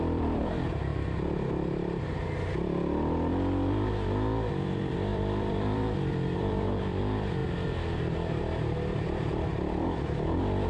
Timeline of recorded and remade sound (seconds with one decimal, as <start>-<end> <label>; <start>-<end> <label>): 0.0-0.9 remade; 0.9-4.5 recorded; 4.5-7.4 remade; 7.4-8.4 recorded; 8.4-10.7 remade